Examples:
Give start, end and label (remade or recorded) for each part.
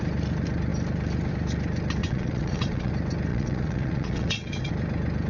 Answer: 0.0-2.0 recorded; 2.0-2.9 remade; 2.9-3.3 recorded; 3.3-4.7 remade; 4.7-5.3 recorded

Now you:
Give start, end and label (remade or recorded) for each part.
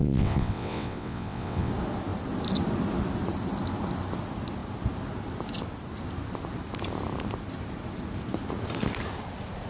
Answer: 0.0-1.7 remade; 1.7-9.7 recorded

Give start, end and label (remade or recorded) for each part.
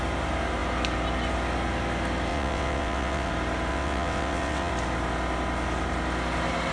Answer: 0.0-2.3 recorded; 2.3-3.3 remade; 3.3-3.7 recorded; 3.7-4.7 remade; 4.7-6.7 recorded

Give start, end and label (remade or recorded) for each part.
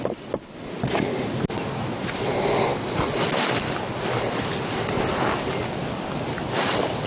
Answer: 0.0-7.1 recorded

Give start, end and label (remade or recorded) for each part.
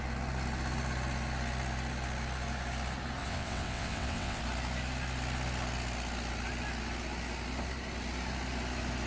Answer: 0.0-3.2 recorded; 3.2-4.4 remade; 4.4-9.1 recorded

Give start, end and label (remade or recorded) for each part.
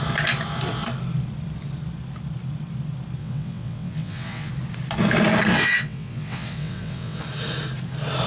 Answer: 0.0-3.2 recorded; 3.2-4.5 remade; 4.5-5.5 recorded; 5.5-7.2 remade; 7.2-8.3 recorded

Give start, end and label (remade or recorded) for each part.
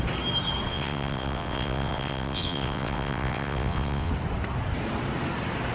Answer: 0.0-0.7 recorded; 0.7-4.1 remade; 4.1-5.7 recorded